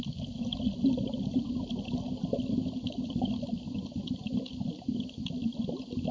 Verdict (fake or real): real